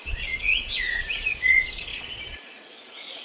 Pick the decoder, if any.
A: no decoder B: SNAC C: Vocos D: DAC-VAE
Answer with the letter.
C